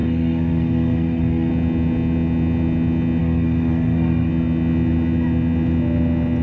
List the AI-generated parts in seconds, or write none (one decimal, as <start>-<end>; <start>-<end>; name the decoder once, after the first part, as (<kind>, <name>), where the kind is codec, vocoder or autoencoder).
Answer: 0.0-1.5 (codec, SNAC); 3.2-4.3